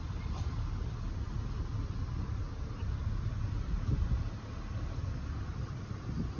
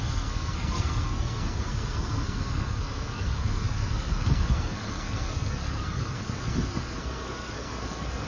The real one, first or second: first